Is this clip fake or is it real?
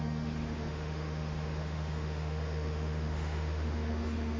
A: fake